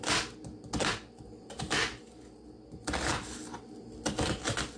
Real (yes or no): yes